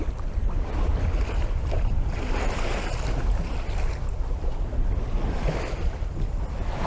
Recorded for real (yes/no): yes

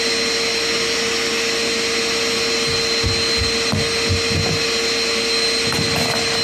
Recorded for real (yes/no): yes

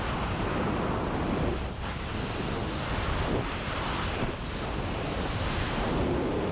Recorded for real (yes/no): yes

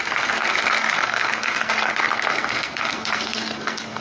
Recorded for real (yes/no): no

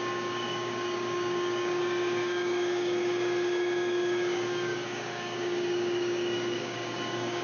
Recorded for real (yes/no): no